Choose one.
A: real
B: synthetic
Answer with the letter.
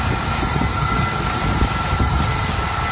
A